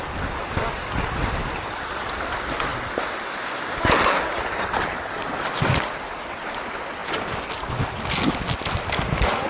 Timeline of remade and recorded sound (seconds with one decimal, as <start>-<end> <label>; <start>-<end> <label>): 0.0-9.5 recorded